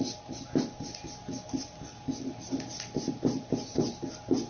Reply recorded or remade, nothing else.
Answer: recorded